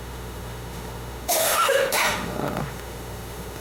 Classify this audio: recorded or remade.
remade